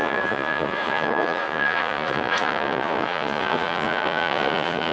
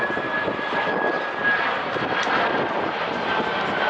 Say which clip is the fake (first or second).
first